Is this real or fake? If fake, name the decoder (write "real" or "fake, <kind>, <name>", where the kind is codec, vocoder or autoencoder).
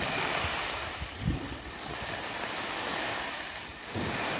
real